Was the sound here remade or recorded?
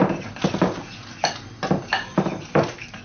recorded